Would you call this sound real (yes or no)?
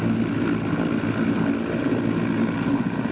yes